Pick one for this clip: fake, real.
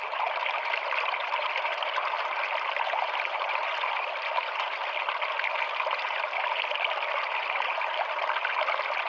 real